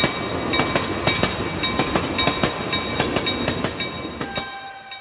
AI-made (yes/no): no